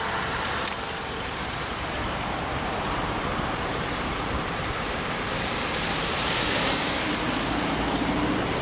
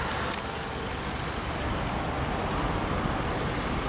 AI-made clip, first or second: first